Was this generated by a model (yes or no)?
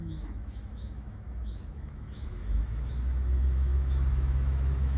yes